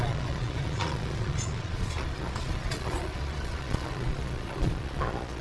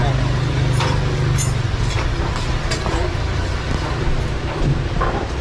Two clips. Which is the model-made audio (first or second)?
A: first